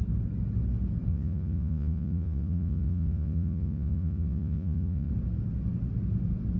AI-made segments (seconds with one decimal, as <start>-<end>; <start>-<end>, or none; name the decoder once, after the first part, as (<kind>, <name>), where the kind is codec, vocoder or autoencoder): 1.1-5.1 (vocoder, Vocos)